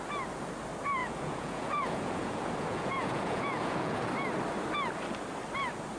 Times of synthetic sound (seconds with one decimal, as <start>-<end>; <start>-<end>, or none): 1.0-4.1